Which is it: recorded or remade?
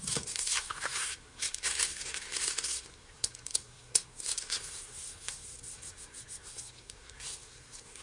remade